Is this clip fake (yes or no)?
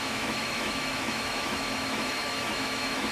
yes